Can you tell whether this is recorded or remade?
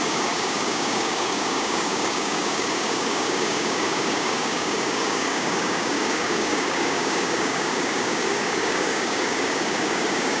remade